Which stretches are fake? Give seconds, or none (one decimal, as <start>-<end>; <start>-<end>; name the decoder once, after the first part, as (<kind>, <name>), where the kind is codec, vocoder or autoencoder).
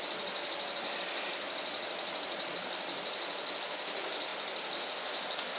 none